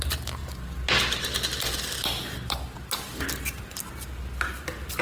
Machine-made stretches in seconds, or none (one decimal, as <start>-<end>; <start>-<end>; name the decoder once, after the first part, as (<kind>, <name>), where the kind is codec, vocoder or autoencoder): none